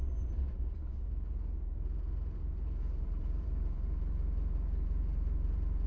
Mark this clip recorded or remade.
remade